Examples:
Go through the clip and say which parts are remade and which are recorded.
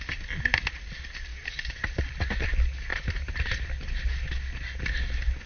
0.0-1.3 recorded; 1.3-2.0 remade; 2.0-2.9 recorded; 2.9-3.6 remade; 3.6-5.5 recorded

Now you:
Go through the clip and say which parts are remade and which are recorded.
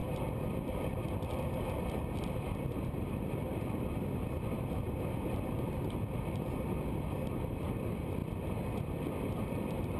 0.0-10.0 recorded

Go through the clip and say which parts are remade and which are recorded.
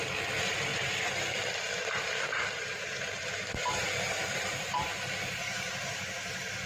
0.0-0.7 remade; 0.7-3.0 recorded; 3.0-6.7 remade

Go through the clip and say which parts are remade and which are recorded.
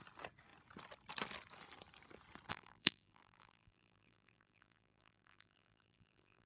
0.0-2.5 recorded; 2.5-6.5 remade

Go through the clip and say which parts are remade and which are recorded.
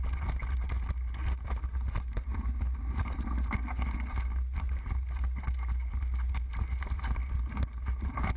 0.0-8.4 recorded